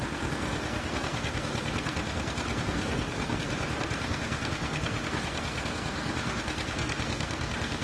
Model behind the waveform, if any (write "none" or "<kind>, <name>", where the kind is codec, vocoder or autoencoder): codec, SNAC